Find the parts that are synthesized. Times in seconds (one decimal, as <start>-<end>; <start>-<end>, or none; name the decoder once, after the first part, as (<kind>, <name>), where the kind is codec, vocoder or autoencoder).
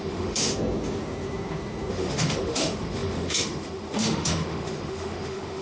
0.0-0.5 (autoencoder, DAC-VAE); 1.9-5.6